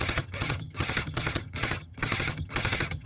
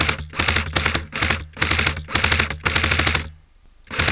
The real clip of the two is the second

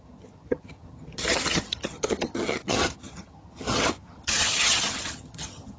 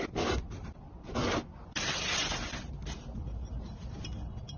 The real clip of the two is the second